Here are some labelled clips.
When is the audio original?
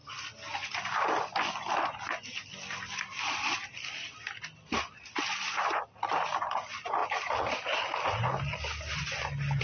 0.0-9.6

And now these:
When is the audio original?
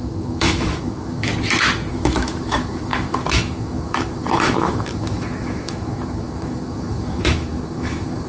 1.3-1.9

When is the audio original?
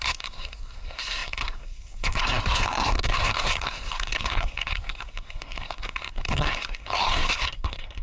none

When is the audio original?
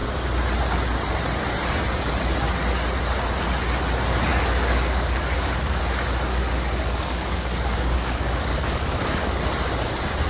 0.0-4.3; 5.8-6.3; 9.4-10.3